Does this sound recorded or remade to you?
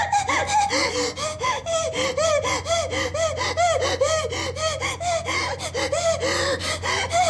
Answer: recorded